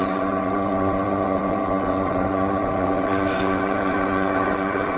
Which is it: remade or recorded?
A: remade